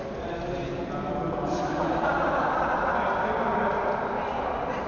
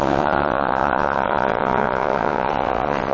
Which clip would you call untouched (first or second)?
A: first